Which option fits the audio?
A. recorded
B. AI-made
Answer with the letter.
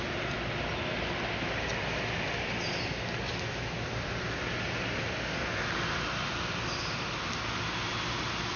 A